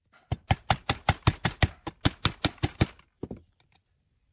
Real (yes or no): yes